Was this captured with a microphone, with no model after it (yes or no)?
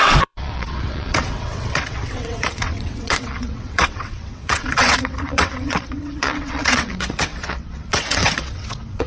no